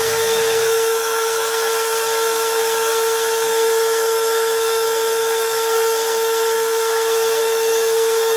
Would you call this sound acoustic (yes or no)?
no